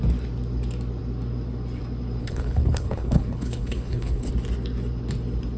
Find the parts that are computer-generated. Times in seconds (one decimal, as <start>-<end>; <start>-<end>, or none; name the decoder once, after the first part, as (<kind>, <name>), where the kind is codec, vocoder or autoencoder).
2.2-4.3 (codec, HILCodec)